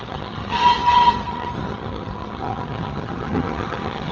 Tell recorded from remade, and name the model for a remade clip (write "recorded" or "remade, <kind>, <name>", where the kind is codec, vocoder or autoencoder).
remade, vocoder, HiFi-GAN